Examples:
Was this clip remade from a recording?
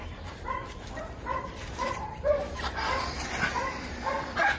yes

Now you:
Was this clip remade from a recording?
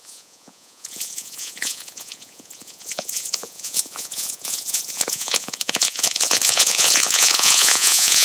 yes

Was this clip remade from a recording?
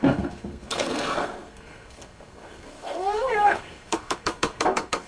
yes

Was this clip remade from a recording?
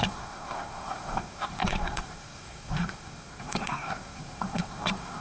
yes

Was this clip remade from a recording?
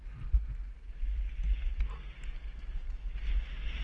no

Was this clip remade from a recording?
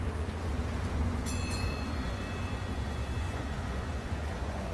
yes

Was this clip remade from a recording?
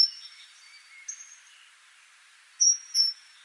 no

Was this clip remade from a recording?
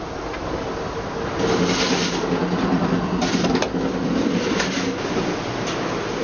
yes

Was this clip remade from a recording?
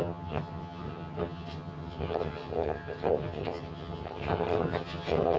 yes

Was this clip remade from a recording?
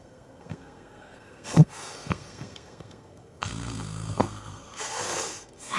yes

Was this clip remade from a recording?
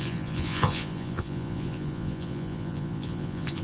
yes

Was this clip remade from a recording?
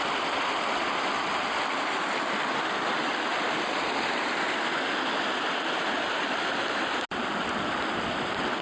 no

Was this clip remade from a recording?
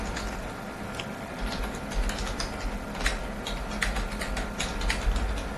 no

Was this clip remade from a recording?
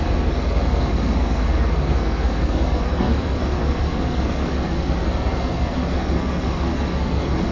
yes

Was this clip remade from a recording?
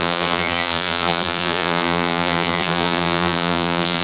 yes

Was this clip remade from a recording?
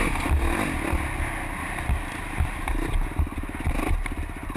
no